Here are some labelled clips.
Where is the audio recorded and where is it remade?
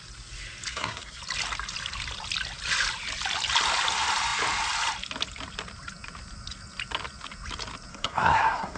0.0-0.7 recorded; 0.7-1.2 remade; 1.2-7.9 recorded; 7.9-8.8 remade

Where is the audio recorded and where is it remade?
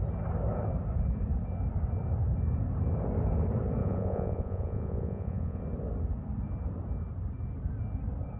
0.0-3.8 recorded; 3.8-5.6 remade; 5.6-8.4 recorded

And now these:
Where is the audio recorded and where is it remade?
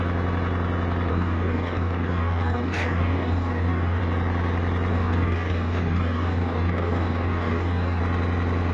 0.0-1.1 recorded; 1.1-4.0 remade; 4.0-4.9 recorded; 4.9-8.0 remade; 8.0-8.7 recorded